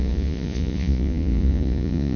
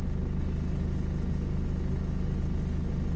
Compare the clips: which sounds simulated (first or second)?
first